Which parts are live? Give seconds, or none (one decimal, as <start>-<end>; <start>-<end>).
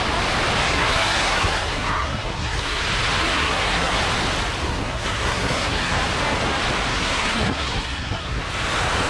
0.0-0.6; 2.8-3.2; 4.0-4.7; 6.0-6.9; 8.4-9.1